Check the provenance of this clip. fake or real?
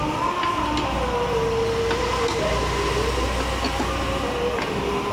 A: real